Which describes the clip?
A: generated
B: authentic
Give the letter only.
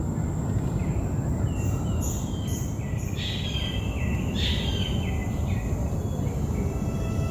B